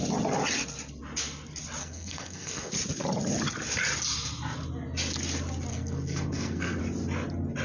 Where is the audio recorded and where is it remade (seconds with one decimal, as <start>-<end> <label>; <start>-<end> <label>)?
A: 0.0-1.8 recorded; 1.8-2.7 remade; 2.7-5.7 recorded; 5.7-6.8 remade; 6.8-7.6 recorded